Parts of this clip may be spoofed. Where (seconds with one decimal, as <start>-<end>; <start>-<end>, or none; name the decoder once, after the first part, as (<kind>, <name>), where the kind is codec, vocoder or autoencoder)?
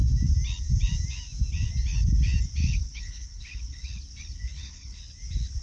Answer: 2.6-4.0 (codec, HILCodec); 4.5-5.0